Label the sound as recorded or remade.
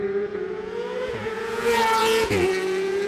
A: remade